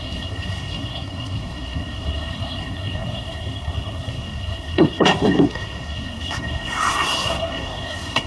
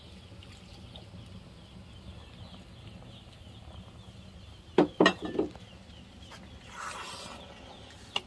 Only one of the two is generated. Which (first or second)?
first